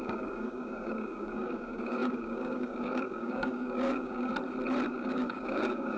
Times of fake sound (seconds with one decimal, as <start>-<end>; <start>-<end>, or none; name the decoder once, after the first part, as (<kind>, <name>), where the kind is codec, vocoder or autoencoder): 0.0-4.3 (codec, DAC); 4.9-6.0

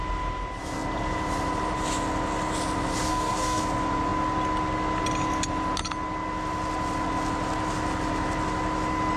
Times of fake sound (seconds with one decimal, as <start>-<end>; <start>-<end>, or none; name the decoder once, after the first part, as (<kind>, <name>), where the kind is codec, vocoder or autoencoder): 3.1-3.6 (codec, DAC)

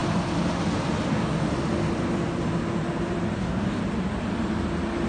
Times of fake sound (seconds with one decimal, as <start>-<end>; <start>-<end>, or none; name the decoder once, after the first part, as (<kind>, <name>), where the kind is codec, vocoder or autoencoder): 1.1-1.5 (codec, DAC); 3.4-3.8